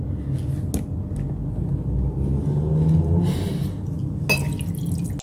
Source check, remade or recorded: recorded